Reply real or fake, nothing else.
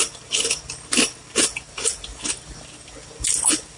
real